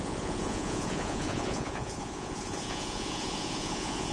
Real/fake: fake